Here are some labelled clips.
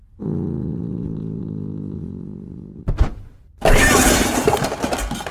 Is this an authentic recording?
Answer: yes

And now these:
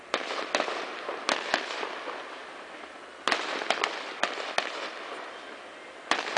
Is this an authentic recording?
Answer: yes